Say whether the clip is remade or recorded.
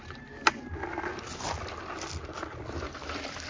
recorded